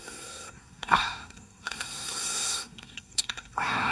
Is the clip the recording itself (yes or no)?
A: no